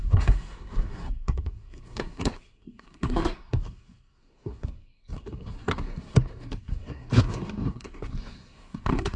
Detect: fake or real fake